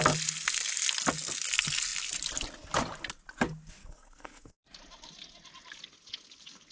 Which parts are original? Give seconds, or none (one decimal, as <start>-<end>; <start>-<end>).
0.0-3.8; 4.5-6.7